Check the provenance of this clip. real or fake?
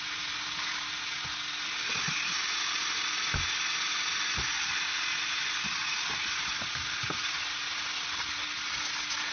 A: real